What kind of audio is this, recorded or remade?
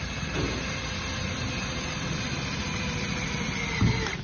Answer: remade